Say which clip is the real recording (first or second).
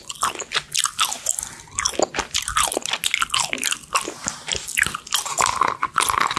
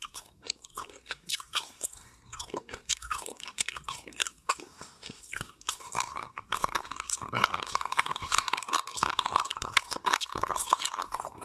first